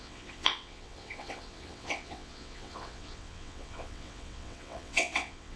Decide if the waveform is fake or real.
fake